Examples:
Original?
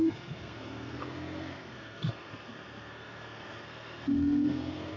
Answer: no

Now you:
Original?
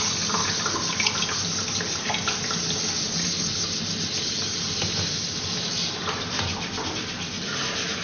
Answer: yes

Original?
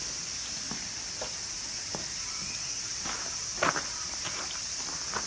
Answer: yes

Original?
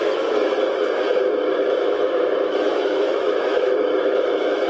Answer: no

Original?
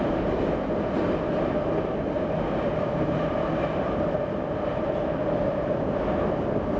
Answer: yes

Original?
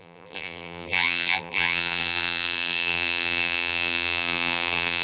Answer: no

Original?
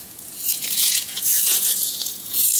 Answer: no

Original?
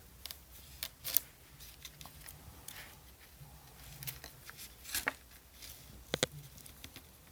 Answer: yes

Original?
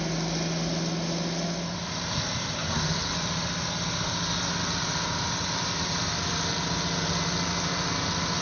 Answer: yes